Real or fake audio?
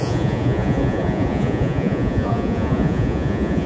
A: fake